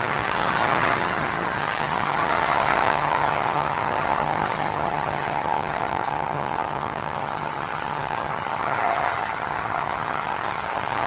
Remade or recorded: remade